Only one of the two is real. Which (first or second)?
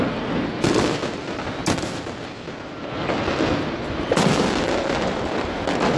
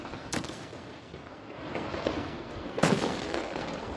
first